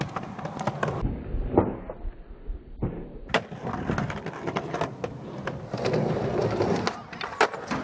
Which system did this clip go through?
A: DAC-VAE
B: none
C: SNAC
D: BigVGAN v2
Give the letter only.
B